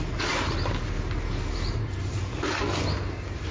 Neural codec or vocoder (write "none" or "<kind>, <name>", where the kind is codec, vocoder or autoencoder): none